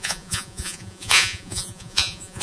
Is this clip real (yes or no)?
no